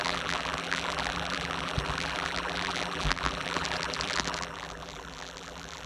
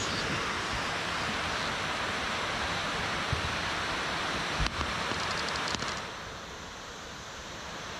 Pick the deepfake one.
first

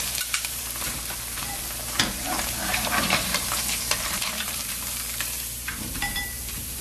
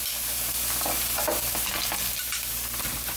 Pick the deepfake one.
first